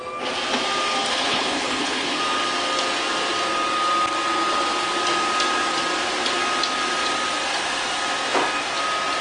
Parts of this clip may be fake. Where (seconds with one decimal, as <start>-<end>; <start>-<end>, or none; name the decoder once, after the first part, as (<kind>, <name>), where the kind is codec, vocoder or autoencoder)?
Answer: 1.1-2.2 (codec, HILCodec)